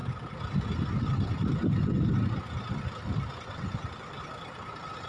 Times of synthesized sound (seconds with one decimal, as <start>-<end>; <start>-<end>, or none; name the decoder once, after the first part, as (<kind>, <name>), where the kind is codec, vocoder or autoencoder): none